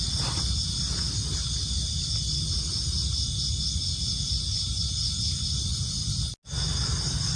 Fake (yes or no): no